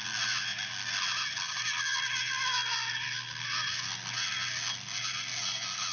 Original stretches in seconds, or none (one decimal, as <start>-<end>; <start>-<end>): 0.0-5.9